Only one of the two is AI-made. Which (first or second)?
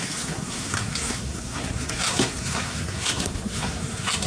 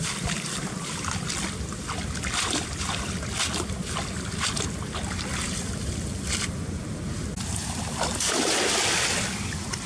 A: first